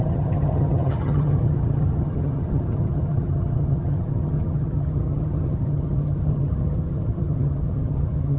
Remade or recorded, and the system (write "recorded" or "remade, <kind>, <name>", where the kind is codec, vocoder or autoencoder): remade, vocoder, HiFi-GAN